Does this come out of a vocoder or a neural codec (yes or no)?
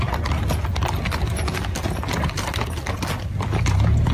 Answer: no